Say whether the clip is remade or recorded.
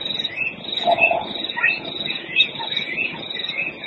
remade